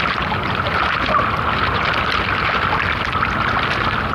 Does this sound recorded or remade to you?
recorded